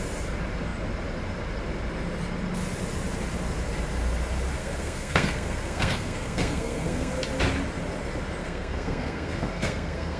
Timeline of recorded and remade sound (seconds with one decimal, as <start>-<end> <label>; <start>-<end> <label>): 0.0-4.6 recorded; 4.6-7.1 remade; 7.1-8.4 recorded; 8.4-10.2 remade

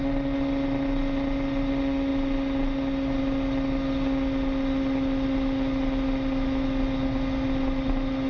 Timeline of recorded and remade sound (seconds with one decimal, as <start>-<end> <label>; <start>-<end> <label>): 0.0-8.3 recorded

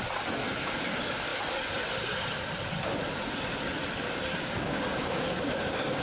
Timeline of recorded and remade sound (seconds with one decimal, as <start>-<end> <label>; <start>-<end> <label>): 0.0-4.3 recorded; 4.3-6.0 remade